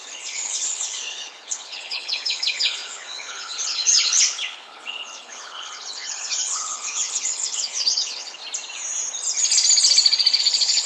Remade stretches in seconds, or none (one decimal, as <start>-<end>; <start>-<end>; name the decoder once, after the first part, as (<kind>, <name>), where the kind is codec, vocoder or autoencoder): 0.0-8.4 (codec, HILCodec); 10.4-10.9